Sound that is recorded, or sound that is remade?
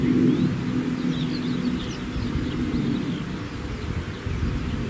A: recorded